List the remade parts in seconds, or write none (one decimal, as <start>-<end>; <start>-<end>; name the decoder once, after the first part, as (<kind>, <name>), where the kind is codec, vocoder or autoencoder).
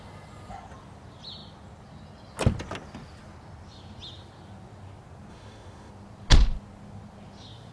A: 5.3-5.9 (autoencoder, DAC-VAE)